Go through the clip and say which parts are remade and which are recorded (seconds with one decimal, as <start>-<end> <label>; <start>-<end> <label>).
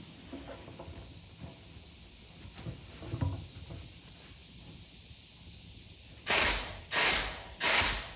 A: 0.0-8.2 recorded